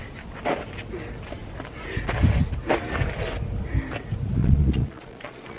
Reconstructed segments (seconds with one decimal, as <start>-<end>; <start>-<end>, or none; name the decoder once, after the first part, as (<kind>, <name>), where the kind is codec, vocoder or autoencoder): 4.4-5.6 (vocoder, Vocos)